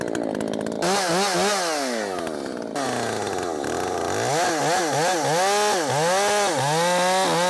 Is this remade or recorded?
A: recorded